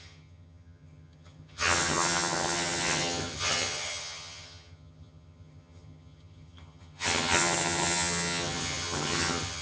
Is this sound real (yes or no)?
no